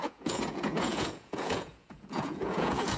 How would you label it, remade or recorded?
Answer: remade